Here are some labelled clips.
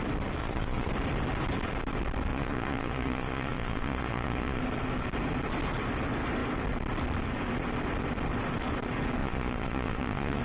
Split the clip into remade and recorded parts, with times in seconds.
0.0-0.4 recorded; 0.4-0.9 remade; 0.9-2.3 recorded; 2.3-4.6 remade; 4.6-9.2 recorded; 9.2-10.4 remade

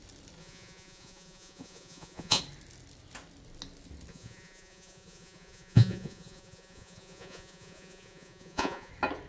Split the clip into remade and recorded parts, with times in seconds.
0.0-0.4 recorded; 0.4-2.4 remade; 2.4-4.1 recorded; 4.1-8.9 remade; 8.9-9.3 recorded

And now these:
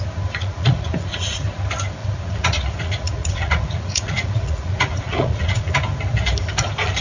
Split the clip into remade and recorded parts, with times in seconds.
0.0-0.4 recorded; 0.4-1.4 remade; 1.4-2.0 recorded; 2.0-5.7 remade; 5.7-7.0 recorded

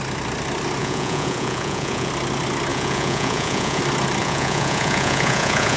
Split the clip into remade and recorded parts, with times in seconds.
0.0-0.8 recorded; 0.8-2.1 remade; 2.1-2.7 recorded; 2.7-3.8 remade; 3.8-4.2 recorded; 4.2-5.8 remade